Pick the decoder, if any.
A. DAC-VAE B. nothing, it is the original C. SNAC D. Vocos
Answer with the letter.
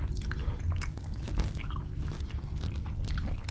B